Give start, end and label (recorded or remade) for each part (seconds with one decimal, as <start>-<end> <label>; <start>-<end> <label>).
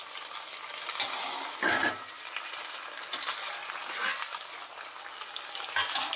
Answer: 0.0-6.2 recorded